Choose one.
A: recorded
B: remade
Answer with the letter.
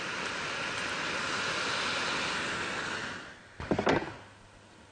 A